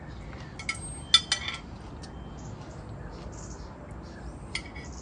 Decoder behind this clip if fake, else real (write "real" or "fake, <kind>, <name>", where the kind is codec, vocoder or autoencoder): real